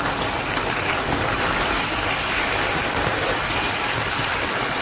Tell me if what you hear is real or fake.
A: real